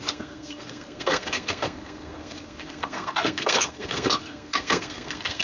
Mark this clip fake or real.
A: fake